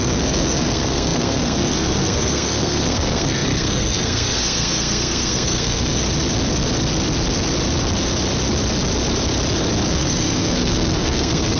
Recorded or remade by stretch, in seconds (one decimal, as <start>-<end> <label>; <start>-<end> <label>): 0.0-6.0 remade; 6.0-9.9 recorded; 9.9-11.6 remade